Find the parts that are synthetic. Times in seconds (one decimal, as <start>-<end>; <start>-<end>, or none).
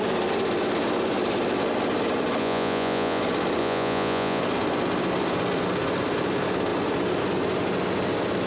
2.4-3.2; 3.6-4.4